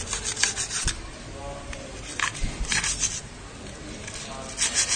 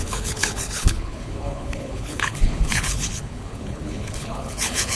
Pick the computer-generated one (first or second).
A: second